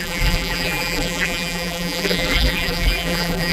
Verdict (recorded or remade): remade